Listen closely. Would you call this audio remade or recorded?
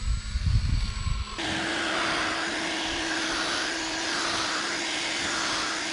recorded